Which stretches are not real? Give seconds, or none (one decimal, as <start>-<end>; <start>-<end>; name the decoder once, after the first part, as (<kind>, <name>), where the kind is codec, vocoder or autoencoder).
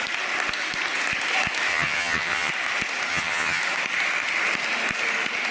1.7-2.5 (vocoder, HiFi-GAN); 3.1-3.6